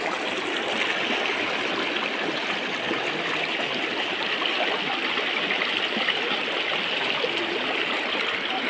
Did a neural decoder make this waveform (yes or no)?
no